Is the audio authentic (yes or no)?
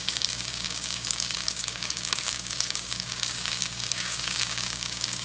no